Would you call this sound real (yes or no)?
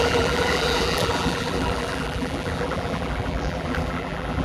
no